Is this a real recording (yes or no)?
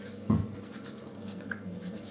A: no